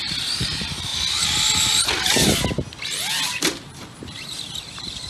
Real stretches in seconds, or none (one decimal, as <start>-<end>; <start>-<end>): 0.9-4.0